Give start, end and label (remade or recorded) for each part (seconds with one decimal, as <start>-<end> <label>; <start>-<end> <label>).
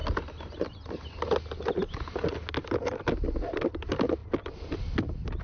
0.0-5.4 recorded